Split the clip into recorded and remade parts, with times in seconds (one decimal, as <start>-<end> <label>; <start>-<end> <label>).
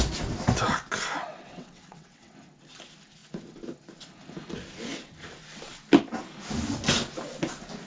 0.0-1.3 recorded; 1.3-2.3 remade; 2.3-7.9 recorded